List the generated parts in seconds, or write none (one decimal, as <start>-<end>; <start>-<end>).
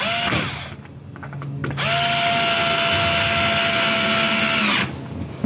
none